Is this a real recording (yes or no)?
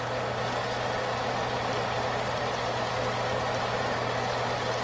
yes